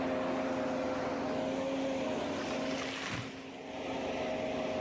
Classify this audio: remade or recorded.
recorded